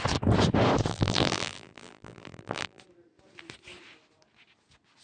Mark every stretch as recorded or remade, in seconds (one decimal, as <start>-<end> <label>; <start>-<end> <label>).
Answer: 0.0-0.9 recorded; 0.9-2.8 remade; 2.8-5.0 recorded